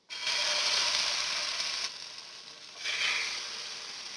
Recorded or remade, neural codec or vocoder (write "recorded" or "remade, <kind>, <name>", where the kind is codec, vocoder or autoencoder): recorded